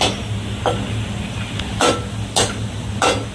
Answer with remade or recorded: recorded